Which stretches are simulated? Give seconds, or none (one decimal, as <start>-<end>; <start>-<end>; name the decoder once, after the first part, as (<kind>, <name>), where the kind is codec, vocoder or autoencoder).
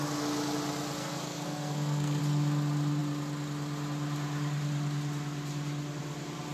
1.0-2.2 (codec, SNAC)